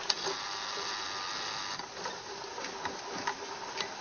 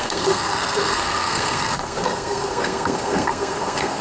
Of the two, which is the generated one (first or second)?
second